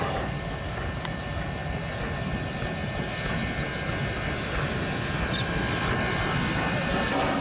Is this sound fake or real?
real